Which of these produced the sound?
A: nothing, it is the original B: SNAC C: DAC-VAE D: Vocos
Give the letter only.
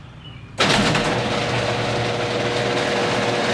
A